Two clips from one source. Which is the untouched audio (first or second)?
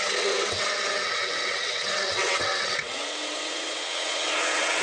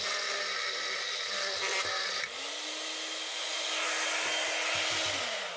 second